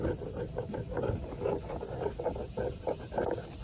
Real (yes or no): yes